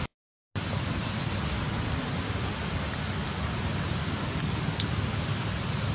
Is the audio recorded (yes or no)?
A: yes